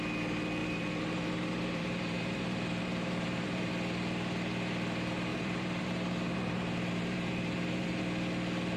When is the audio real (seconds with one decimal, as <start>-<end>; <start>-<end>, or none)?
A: 0.0-0.6; 3.7-5.3; 8.0-8.8